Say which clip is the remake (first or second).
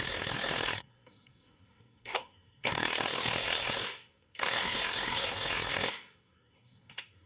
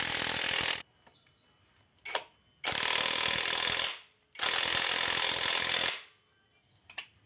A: first